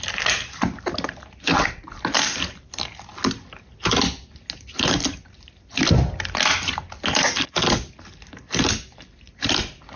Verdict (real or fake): real